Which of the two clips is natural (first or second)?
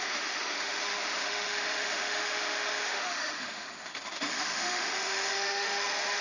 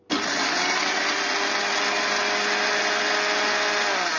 second